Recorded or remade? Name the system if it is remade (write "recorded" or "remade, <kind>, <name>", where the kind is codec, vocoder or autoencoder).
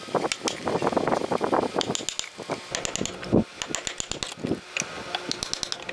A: recorded